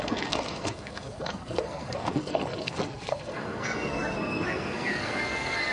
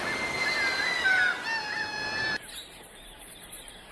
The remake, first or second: first